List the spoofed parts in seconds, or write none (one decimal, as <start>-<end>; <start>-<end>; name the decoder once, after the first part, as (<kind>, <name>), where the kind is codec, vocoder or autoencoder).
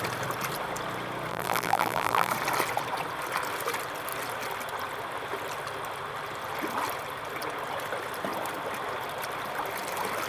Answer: 1.3-2.3 (vocoder, BigVGAN v2)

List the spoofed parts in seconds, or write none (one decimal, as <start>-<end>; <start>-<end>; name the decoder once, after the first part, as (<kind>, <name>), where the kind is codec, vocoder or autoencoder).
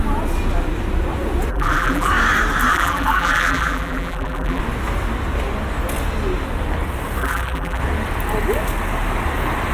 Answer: 1.5-2.1 (vocoder, BigVGAN v2); 2.7-4.6; 7.2-7.8